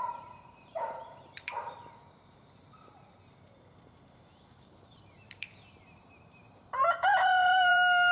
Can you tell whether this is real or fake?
fake